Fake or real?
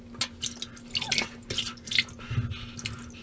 real